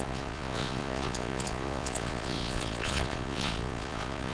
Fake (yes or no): yes